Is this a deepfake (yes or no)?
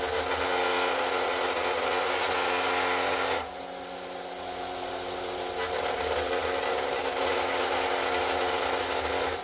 no